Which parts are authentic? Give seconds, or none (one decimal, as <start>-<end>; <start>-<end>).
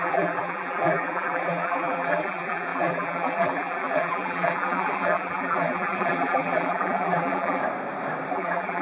7.6-8.3